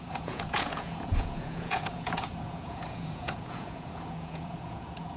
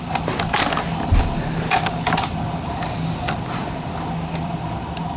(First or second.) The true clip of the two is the second